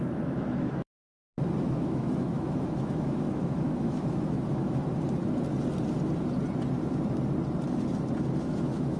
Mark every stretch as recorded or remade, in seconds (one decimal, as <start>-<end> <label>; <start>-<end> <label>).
0.0-1.0 remade; 1.0-1.6 recorded; 1.6-4.8 remade; 4.8-8.4 recorded; 8.4-9.0 remade